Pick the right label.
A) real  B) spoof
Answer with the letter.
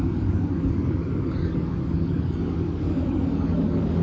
B